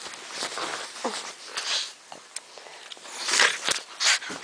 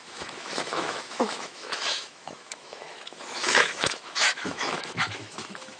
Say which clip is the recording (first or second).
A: first